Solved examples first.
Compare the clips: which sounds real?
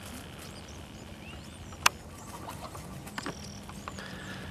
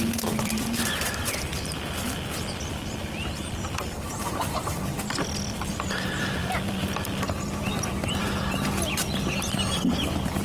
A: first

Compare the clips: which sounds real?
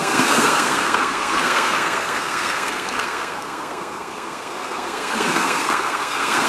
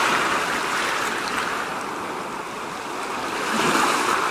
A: second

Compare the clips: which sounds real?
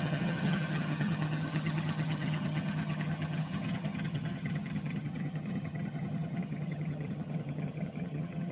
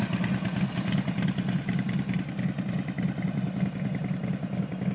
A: second